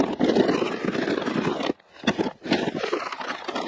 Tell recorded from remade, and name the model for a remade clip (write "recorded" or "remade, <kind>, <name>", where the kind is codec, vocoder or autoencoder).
recorded